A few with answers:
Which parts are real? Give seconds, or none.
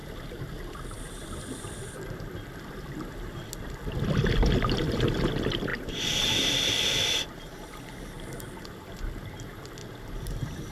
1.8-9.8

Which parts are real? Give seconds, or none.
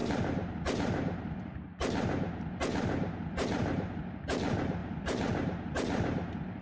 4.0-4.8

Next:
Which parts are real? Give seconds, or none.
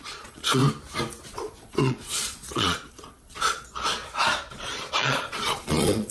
0.6-1.3; 4.0-4.5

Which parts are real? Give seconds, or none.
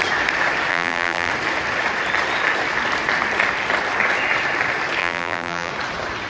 0.0-0.7; 1.3-5.0; 5.7-6.3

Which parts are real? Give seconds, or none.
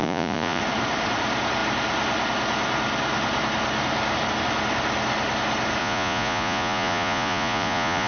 0.6-5.8